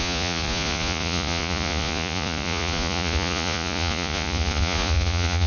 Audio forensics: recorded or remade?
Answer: remade